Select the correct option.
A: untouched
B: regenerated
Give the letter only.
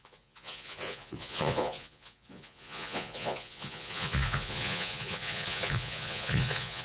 B